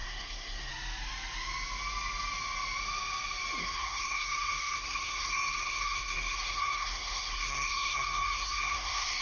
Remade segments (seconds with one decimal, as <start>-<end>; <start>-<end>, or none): 0.0-0.7; 3.6-9.2